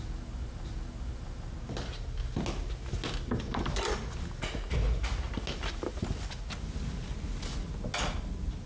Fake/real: real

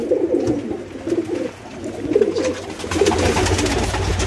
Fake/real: real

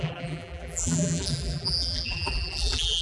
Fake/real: fake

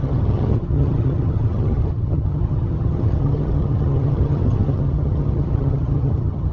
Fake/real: fake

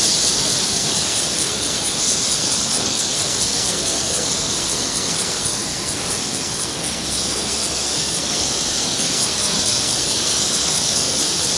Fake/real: fake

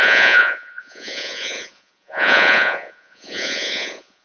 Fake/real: fake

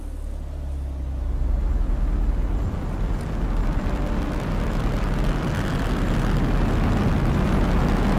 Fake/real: real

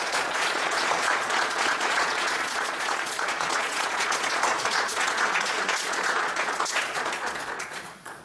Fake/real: fake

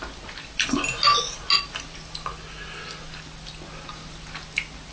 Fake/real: real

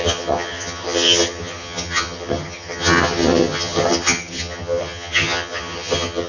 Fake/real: fake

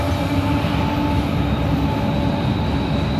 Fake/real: real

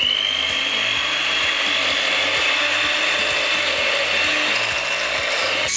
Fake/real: real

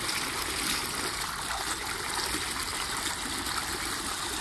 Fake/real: real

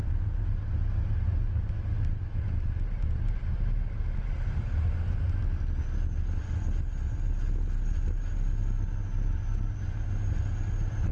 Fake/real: real